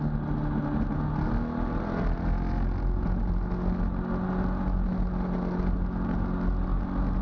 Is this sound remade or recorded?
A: recorded